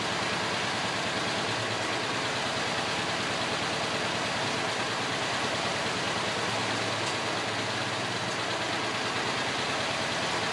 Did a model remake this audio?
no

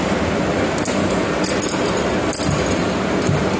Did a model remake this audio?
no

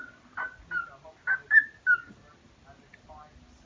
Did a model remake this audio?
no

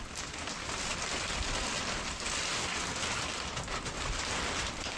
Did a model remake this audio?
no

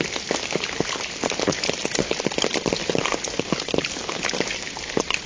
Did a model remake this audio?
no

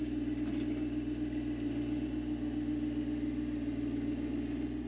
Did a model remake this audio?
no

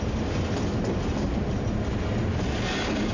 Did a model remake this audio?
no